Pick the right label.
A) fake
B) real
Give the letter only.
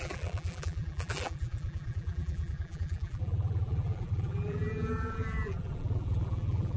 A